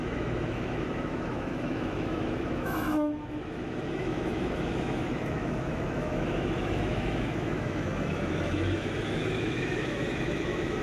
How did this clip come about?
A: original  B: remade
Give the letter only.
B